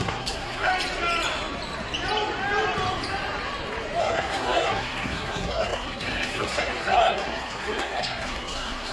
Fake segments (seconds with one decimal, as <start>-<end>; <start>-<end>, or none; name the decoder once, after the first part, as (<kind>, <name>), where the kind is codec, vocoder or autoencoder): 0.0-0.7 (codec, SNAC); 4.0-8.9